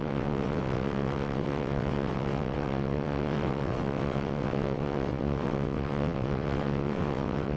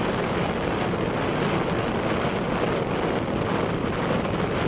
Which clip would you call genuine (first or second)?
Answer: second